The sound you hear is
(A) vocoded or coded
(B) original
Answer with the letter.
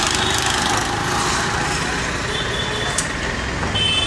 B